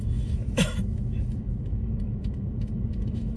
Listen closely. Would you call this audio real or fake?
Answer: fake